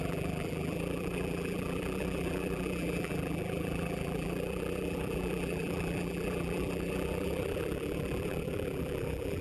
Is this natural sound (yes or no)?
no